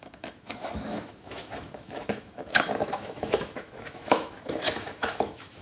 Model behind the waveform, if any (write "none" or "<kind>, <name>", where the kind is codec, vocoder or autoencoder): autoencoder, DAC-VAE